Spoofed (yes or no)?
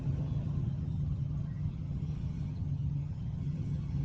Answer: yes